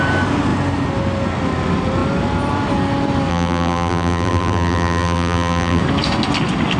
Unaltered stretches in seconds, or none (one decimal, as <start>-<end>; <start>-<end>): 0.0-3.3; 5.8-6.8